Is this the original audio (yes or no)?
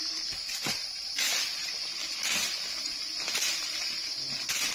yes